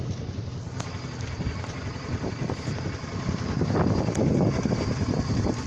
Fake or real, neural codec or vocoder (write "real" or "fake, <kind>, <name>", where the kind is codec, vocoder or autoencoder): real